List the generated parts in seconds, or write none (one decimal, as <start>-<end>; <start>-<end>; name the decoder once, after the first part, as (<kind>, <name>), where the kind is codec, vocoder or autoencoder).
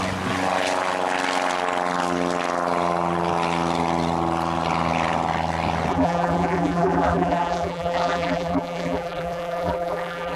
5.9-10.4 (vocoder, BigVGAN v2)